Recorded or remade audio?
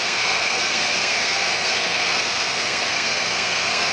remade